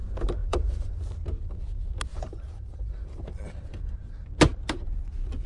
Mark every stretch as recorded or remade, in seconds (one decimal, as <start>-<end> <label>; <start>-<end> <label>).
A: 0.0-0.4 recorded; 0.4-1.0 remade; 1.0-2.1 recorded; 2.1-4.1 remade; 4.1-5.5 recorded